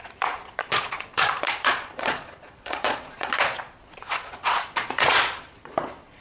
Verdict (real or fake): fake